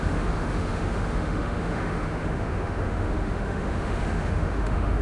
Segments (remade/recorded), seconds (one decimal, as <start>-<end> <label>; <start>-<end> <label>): 0.0-5.0 remade